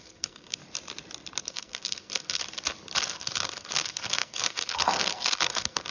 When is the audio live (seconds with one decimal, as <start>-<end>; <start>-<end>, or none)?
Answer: 0.6-1.4; 2.4-3.0